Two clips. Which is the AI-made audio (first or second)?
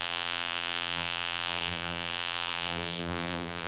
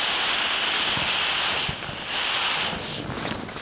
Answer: first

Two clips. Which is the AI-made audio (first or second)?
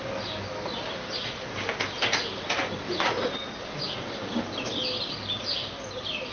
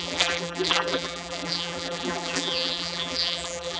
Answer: second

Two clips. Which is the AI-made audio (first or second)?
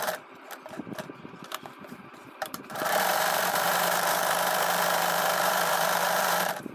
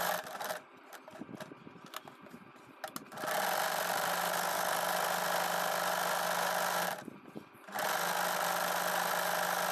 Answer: first